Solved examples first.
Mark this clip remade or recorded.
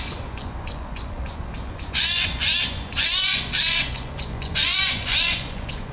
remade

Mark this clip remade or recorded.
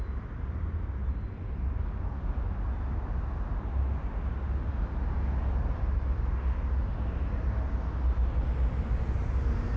recorded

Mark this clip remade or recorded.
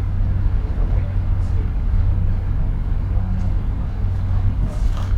remade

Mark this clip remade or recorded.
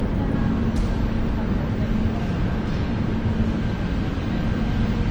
recorded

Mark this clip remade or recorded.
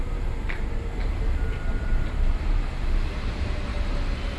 remade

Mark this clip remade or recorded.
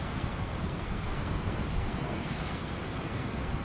remade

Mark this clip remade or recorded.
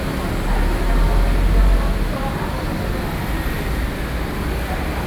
recorded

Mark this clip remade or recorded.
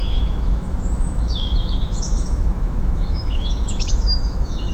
remade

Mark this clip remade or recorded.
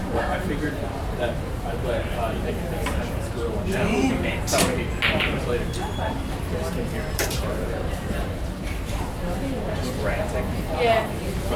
remade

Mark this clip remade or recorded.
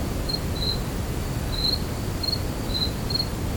recorded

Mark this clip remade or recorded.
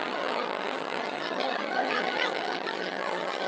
remade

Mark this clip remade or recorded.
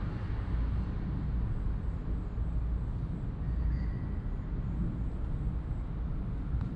recorded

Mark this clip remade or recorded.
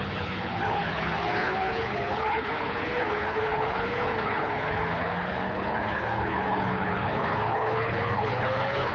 remade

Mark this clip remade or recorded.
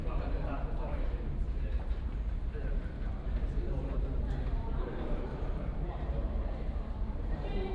remade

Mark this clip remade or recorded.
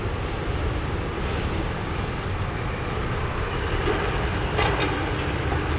remade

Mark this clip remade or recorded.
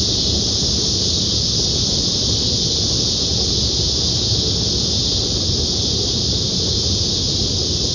recorded